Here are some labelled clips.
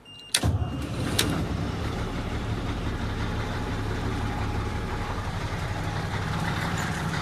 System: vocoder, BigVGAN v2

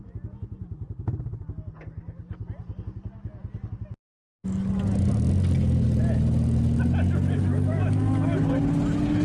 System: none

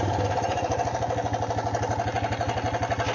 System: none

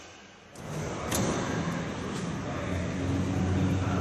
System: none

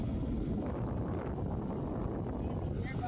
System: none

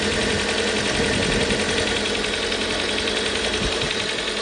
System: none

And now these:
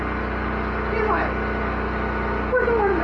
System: none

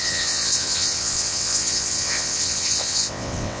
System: vocoder, WaveNeXt